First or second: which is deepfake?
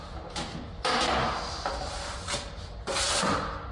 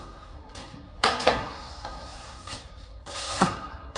second